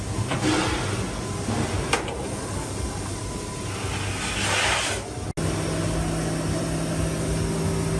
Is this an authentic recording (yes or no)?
yes